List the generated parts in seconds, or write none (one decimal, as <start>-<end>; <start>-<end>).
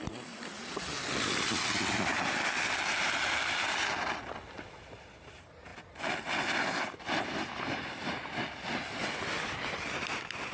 none